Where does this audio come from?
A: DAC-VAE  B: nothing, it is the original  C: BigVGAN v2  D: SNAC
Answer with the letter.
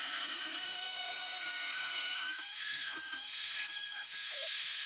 D